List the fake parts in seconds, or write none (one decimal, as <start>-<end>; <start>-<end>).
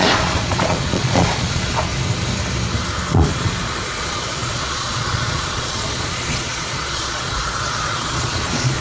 0.0-1.9; 3.1-8.8